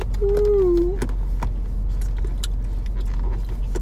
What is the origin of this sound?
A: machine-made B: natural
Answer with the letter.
B